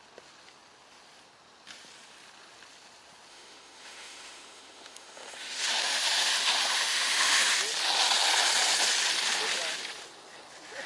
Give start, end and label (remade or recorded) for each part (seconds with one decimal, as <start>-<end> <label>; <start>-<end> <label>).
0.0-3.3 recorded; 3.3-7.6 remade; 7.6-10.9 recorded